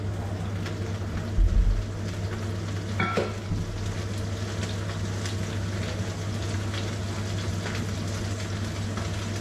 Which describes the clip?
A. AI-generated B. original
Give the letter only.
B